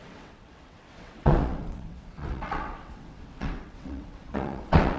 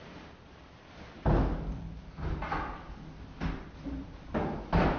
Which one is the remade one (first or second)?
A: first